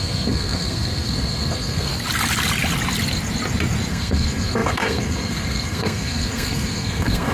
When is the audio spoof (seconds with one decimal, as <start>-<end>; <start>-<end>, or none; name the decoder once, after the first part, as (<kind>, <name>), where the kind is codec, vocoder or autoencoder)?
0.0-1.9 (codec, SNAC); 3.9-7.3